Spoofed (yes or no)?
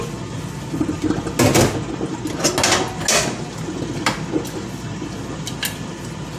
no